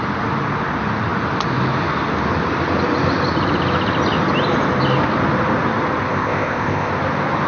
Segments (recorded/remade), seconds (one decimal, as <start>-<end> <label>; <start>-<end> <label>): 0.0-6.1 recorded; 6.1-6.9 remade; 6.9-7.5 recorded